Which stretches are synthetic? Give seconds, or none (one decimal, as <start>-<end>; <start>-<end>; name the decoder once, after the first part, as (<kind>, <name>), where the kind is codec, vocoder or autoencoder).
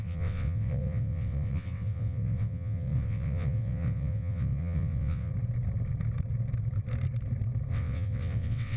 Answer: 0.0-5.3 (vocoder, WaveNeXt); 7.7-8.8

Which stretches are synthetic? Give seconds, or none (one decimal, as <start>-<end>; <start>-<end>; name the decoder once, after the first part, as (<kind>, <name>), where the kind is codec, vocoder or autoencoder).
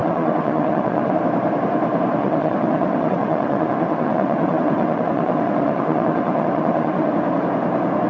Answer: 0.0-1.2 (vocoder, WaveNeXt); 2.2-7.1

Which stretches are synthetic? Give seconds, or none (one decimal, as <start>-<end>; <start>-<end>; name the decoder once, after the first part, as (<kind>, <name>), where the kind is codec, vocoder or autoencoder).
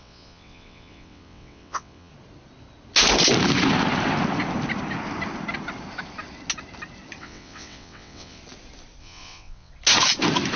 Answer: 0.0-2.1 (vocoder, WaveNeXt); 7.2-8.4; 9.0-9.7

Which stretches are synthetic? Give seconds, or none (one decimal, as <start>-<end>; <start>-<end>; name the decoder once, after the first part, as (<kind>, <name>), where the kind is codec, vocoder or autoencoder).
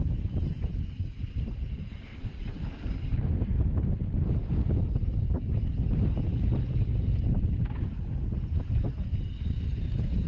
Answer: 2.1-2.6 (vocoder, WaveNeXt)